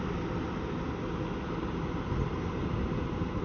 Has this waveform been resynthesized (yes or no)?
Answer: no